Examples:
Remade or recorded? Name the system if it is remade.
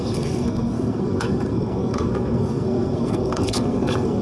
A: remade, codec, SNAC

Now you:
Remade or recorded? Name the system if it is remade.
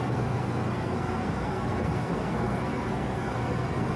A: remade, codec, SNAC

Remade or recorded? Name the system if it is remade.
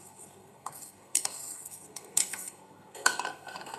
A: remade, codec, SNAC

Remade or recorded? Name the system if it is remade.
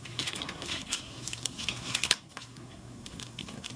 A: remade, codec, SNAC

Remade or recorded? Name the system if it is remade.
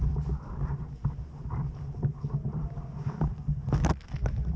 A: recorded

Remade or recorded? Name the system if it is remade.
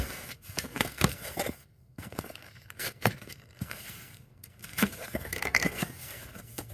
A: remade, codec, SNAC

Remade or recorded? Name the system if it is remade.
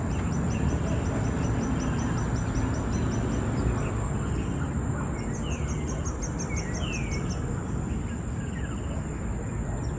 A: recorded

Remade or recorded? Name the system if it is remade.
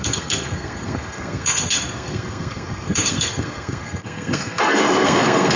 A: remade, codec, SNAC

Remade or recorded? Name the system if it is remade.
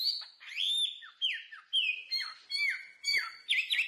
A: recorded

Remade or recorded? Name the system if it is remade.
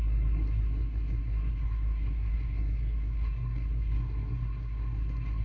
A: remade, codec, SNAC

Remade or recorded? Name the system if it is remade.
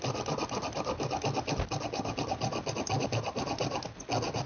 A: recorded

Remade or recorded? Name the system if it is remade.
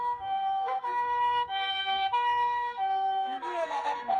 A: remade, codec, SNAC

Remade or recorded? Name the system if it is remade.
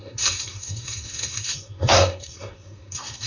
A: remade, codec, SNAC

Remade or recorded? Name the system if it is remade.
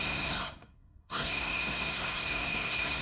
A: remade, codec, SNAC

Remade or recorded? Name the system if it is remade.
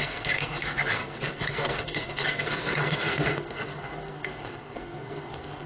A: remade, codec, SNAC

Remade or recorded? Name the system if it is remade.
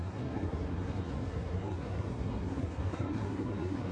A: remade, codec, SNAC